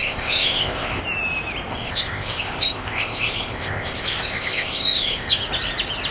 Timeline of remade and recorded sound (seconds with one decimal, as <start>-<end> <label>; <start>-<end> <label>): 0.0-1.0 remade; 1.0-1.7 recorded; 1.7-5.4 remade; 5.4-6.1 recorded